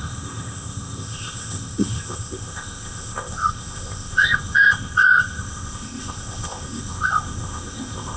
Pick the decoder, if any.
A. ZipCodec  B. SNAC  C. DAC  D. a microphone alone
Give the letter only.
A